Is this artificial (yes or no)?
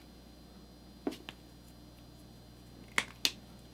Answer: no